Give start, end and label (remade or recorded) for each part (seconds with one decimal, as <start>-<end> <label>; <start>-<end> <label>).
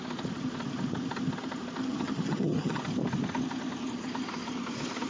0.0-1.8 recorded; 1.8-2.8 remade; 2.8-5.1 recorded